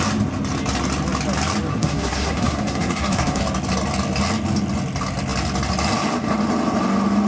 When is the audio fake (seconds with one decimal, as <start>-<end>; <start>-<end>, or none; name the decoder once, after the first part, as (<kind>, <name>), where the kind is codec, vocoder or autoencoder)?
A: 1.7-3.4 (codec, SNAC)